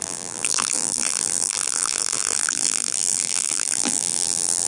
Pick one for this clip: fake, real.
fake